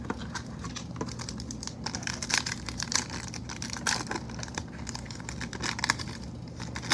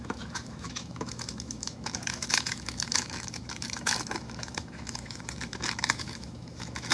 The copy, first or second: second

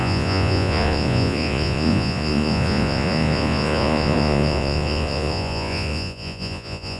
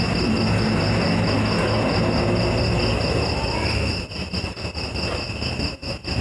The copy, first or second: first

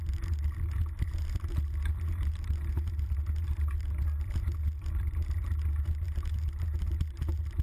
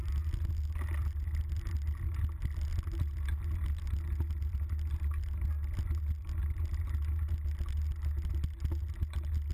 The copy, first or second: first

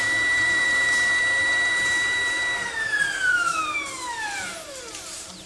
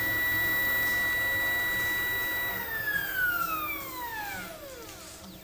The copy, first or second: first